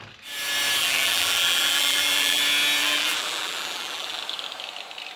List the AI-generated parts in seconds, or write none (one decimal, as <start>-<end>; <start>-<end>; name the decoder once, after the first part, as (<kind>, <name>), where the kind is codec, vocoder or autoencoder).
0.8-2.4 (vocoder, BigVGAN v2); 2.8-4.2